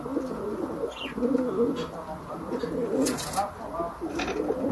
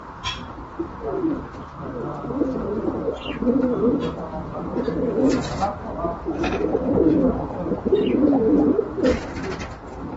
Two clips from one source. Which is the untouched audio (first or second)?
first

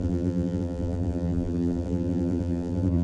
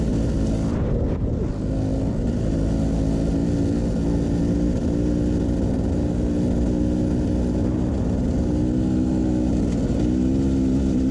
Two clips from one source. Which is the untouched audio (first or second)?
second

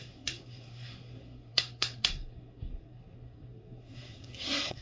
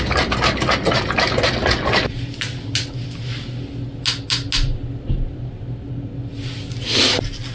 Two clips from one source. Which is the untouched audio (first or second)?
second